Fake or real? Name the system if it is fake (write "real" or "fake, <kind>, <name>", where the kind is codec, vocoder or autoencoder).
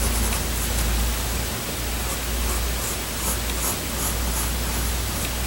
real